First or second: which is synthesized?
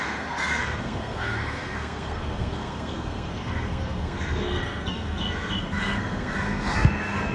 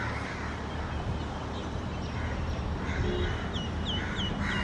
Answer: first